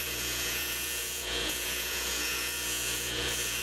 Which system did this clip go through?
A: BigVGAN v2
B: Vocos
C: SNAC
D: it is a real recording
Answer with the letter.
B